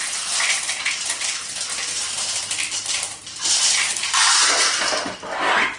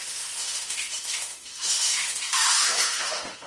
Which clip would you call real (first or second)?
first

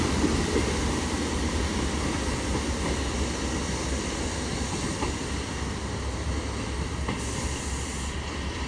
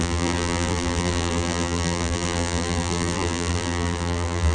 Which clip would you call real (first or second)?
first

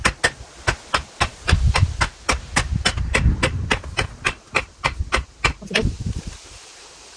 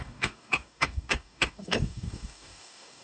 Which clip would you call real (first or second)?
first